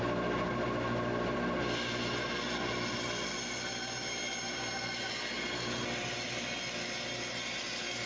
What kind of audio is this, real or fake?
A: real